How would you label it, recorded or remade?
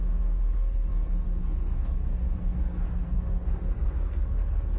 remade